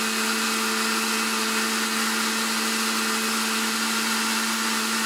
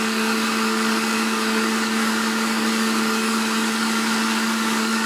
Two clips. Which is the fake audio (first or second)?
second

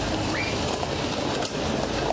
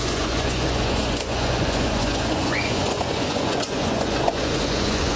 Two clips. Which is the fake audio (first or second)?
second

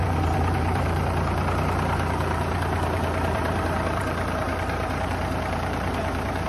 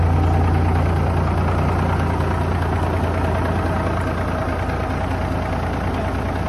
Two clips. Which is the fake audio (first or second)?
first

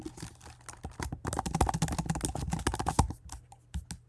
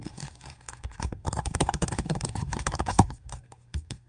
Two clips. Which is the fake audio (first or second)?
second